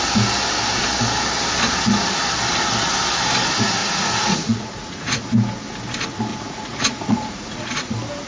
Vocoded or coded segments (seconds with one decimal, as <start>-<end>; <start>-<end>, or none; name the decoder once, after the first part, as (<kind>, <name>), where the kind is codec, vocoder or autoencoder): 3.8-5.2 (vocoder, Vocos); 6.3-7.9